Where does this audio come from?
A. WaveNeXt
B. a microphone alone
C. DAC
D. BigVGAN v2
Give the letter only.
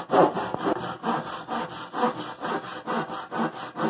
B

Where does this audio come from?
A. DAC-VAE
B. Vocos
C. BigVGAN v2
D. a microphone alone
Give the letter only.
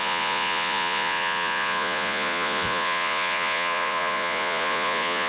B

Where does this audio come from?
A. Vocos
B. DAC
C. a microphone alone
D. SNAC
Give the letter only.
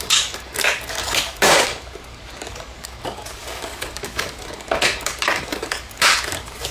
B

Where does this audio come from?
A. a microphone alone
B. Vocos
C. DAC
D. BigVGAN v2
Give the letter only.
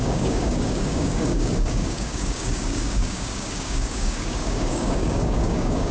C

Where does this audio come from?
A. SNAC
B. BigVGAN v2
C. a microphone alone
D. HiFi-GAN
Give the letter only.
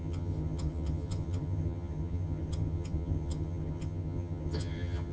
D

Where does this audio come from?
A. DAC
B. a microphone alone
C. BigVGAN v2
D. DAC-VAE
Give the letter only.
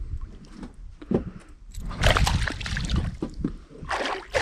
C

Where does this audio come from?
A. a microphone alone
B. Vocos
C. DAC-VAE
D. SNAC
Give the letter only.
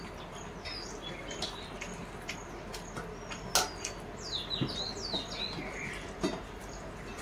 A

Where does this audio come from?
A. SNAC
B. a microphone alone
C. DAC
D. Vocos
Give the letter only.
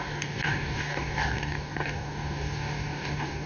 C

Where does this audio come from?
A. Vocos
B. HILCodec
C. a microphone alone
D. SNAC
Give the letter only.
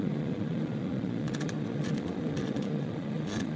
A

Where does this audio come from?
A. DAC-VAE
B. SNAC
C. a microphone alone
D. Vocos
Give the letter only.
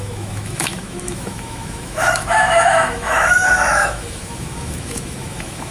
A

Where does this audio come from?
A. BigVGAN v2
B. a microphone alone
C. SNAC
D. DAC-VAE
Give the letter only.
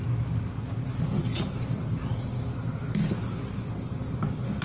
B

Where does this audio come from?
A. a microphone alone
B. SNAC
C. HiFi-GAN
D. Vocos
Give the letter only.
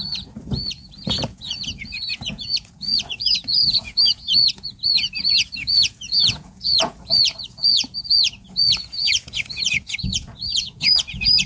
D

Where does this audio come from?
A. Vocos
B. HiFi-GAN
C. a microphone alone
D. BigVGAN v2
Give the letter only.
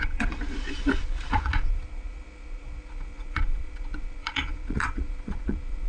A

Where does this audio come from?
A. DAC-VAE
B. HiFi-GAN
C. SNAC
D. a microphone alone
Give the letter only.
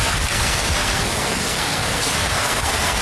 C